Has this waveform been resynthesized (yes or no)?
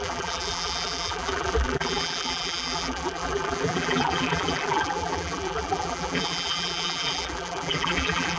yes